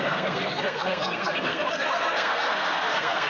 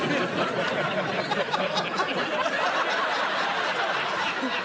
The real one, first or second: second